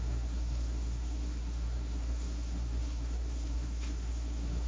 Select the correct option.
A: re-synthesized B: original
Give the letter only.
A